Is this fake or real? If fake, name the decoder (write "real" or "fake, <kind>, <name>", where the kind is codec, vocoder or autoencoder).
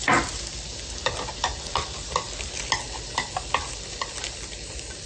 real